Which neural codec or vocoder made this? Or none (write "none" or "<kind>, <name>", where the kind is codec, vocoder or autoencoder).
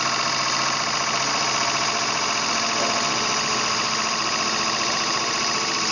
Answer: none